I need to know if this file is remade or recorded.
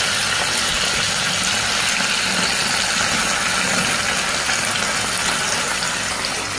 recorded